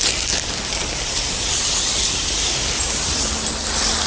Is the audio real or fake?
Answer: real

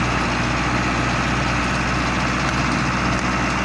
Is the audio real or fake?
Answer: real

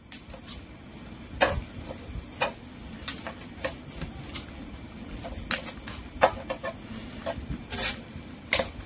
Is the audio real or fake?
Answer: real